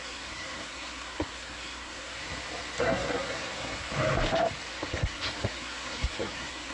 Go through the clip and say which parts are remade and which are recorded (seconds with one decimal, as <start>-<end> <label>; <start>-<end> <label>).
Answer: 0.0-2.2 remade; 2.2-2.8 recorded; 2.8-3.9 remade; 3.9-4.7 recorded; 4.7-6.7 remade